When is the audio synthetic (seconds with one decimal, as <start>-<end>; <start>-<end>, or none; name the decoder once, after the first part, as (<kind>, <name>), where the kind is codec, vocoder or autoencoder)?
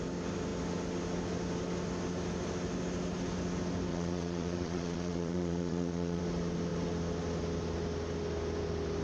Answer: 3.9-6.2 (vocoder, Vocos)